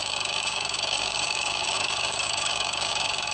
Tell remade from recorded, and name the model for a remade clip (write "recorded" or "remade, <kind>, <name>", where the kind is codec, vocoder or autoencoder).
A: remade, codec, DAC